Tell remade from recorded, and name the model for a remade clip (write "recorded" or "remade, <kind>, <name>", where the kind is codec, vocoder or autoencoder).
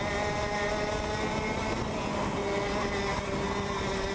recorded